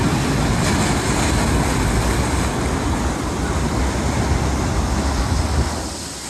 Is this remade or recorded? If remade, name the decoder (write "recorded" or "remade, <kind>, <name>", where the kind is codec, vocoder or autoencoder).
recorded